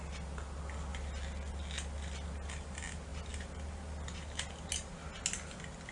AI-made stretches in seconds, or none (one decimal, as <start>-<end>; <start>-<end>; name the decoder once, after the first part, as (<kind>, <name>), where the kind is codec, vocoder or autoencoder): none

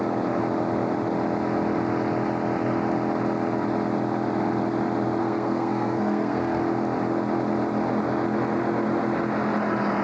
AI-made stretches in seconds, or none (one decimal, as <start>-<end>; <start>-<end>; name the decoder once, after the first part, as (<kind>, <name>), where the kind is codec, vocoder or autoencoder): 5.2-6.6 (codec, SNAC)

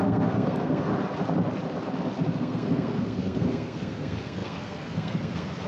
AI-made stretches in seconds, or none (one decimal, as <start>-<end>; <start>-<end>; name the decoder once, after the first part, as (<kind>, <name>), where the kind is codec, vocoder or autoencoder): 0.0-0.9 (codec, SNAC); 2.3-5.7

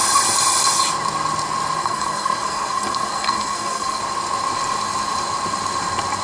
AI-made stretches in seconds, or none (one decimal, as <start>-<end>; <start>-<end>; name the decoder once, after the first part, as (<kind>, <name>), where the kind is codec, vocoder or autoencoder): 1.8-4.0 (codec, SNAC)

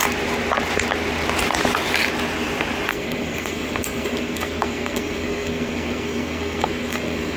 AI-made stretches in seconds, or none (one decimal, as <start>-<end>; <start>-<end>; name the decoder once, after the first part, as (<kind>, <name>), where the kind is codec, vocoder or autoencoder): 2.9-7.4 (codec, SNAC)